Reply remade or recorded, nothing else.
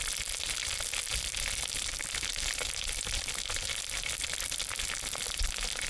recorded